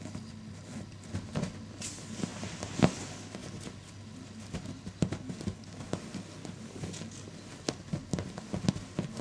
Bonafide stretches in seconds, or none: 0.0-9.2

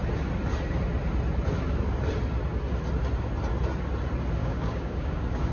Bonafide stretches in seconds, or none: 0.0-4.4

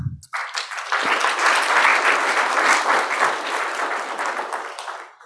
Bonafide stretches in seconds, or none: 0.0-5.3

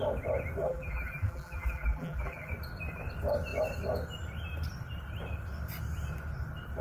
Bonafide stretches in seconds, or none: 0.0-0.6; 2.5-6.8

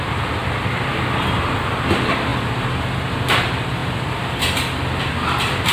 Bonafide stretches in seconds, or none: 0.4-0.9; 2.3-3.3

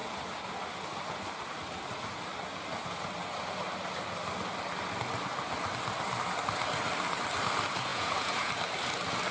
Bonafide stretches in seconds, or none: 0.0-7.9; 8.5-9.3

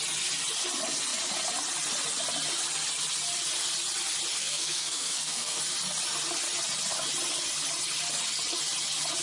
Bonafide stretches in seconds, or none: 0.0-4.4; 5.6-9.2